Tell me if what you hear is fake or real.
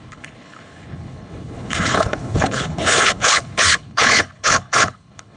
fake